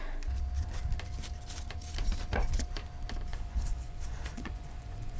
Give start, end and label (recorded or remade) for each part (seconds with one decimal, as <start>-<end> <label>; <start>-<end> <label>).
0.0-3.3 recorded; 3.3-5.2 remade